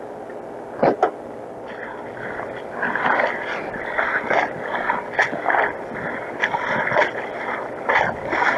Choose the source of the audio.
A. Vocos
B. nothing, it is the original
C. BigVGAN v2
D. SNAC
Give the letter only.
B